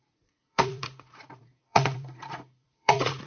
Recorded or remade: remade